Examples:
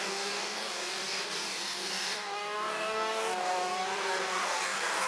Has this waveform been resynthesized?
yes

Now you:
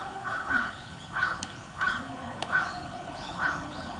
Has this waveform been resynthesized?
yes